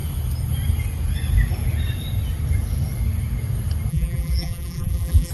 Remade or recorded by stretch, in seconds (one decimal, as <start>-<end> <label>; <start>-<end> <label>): 0.0-3.9 recorded; 3.9-5.3 remade